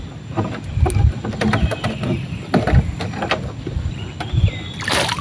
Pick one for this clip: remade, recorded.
recorded